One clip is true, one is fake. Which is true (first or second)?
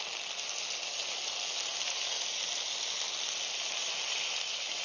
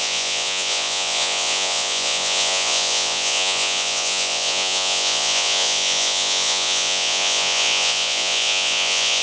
first